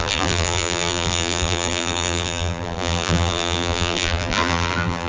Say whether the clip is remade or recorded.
remade